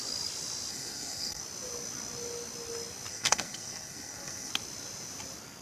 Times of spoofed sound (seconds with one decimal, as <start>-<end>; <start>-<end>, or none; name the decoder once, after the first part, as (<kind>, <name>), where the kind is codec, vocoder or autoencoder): 0.7-1.4 (codec, SNAC); 3.1-4.5